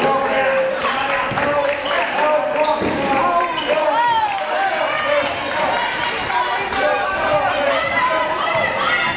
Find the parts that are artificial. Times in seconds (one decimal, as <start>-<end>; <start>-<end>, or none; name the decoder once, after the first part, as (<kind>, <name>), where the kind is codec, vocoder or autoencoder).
none